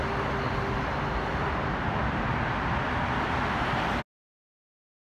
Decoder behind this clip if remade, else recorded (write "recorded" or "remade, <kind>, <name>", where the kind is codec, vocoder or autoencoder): recorded